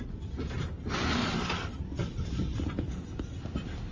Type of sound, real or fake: real